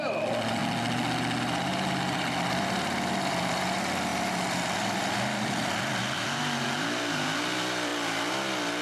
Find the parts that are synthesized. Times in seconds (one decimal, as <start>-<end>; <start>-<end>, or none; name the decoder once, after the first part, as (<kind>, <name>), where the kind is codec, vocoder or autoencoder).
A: 0.0-0.6 (vocoder, BigVGAN v2); 1.4-7.9